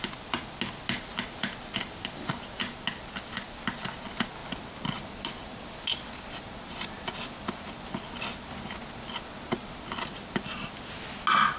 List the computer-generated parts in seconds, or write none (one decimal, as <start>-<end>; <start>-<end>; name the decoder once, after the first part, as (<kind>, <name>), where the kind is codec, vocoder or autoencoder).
4.4-8.0 (vocoder, BigVGAN v2)